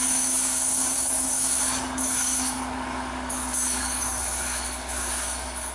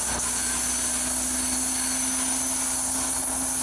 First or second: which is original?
second